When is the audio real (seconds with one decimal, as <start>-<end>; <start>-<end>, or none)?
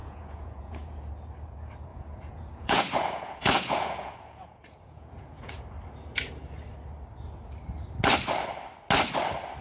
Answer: 1.1-1.9; 5.6-9.6